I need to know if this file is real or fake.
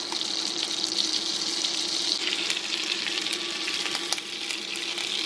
real